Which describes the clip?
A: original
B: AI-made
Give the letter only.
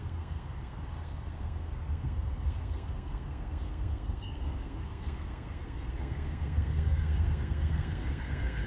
B